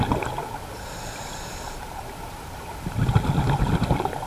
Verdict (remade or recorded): recorded